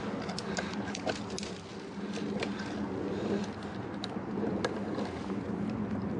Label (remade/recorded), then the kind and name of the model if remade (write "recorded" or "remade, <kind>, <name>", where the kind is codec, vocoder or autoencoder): recorded